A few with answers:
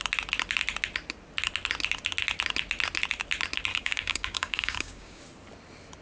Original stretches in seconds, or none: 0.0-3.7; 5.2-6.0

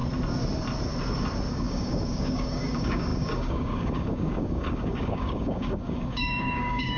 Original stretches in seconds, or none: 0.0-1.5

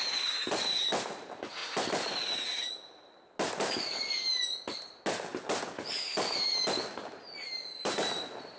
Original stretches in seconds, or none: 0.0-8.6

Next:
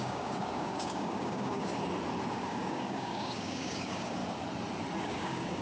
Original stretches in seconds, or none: 1.7-2.3; 4.2-5.0

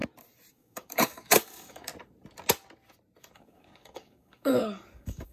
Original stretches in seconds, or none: 0.0-0.5; 1.9-3.2

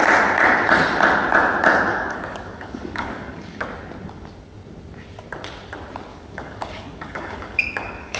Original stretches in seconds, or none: 0.0-1.9; 3.6-6.1

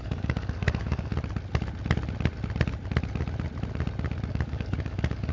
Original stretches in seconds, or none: 1.1-4.3

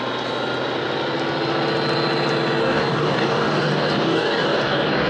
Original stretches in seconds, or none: 0.0-2.6